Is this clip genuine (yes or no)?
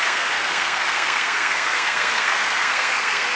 no